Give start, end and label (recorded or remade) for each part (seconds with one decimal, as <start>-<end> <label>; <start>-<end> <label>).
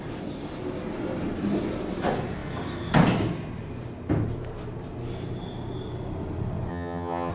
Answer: 0.0-6.7 recorded; 6.7-7.3 remade